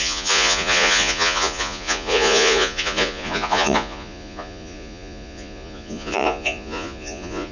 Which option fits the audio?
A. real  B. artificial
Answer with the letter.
B